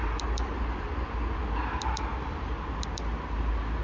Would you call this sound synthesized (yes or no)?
no